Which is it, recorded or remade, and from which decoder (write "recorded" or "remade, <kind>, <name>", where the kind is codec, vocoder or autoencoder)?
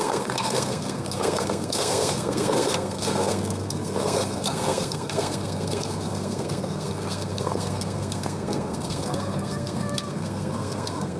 remade, codec, SNAC